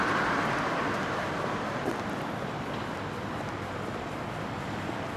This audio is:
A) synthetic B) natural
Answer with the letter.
B